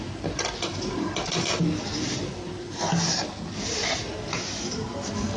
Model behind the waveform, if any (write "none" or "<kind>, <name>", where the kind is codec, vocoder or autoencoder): none